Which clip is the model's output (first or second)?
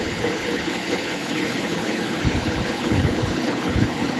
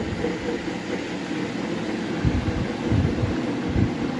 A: first